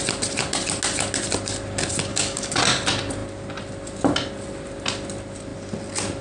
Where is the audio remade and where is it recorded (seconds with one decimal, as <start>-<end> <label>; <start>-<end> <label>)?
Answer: 0.0-2.1 recorded; 2.1-2.6 remade; 2.6-6.2 recorded